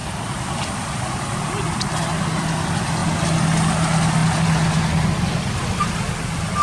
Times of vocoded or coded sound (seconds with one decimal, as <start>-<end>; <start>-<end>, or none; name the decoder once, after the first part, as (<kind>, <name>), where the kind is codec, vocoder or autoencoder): none